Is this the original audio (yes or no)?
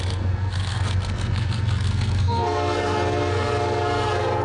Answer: no